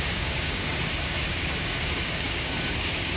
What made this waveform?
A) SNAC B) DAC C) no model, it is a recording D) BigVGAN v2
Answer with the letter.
B